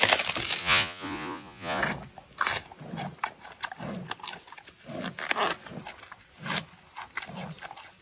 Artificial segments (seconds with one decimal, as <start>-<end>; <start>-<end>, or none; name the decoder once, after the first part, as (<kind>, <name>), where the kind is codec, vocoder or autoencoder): 0.6-1.8 (vocoder, Vocos)